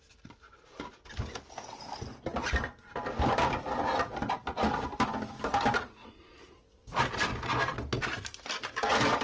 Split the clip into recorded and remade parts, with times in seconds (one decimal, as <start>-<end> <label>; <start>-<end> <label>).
0.0-9.2 recorded